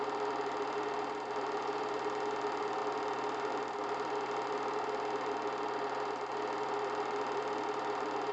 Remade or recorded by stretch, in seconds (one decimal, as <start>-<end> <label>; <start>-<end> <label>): 0.0-8.3 recorded